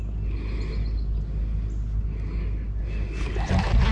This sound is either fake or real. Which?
real